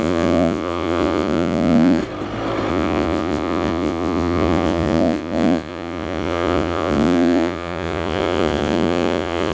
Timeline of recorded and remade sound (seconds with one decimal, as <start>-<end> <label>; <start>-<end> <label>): 0.0-2.0 remade; 2.0-2.7 recorded; 2.7-9.5 remade